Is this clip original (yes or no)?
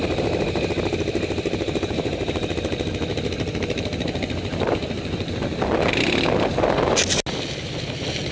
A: yes